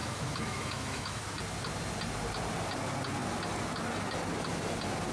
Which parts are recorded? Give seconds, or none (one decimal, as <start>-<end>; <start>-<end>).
1.2-5.1